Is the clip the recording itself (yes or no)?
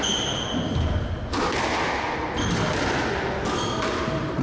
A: yes